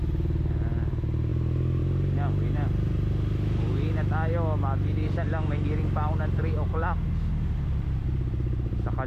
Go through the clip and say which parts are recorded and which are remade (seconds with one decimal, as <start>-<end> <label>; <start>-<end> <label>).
0.0-9.1 recorded